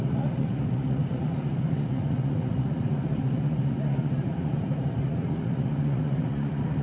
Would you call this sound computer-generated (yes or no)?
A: yes